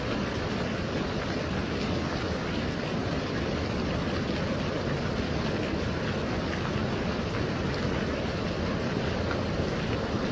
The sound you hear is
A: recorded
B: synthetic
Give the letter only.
A